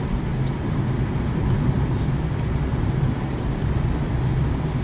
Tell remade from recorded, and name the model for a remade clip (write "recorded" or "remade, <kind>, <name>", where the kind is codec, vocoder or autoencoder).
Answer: recorded